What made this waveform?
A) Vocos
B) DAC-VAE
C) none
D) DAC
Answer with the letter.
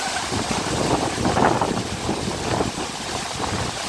C